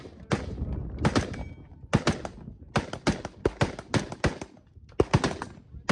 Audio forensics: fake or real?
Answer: real